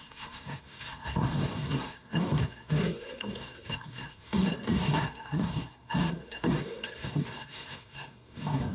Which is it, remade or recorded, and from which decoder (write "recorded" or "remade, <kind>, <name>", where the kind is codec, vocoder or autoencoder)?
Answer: remade, codec, SNAC